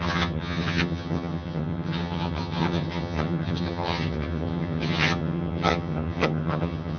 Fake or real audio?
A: fake